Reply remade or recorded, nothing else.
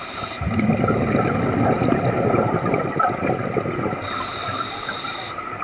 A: recorded